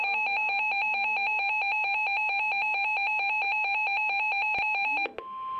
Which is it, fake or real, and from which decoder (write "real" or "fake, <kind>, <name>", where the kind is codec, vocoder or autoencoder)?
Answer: real